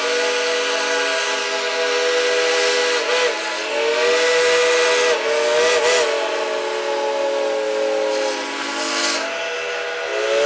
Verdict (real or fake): real